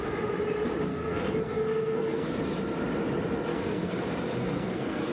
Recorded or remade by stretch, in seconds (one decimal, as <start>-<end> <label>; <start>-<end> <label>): 0.0-0.9 recorded; 0.9-2.3 remade; 2.3-3.5 recorded; 3.5-4.0 remade; 4.0-4.4 recorded; 4.4-5.1 remade